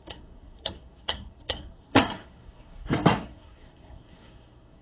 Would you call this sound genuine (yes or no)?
no